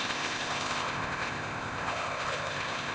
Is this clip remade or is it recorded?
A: remade